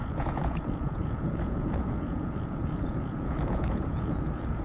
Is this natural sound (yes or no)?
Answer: no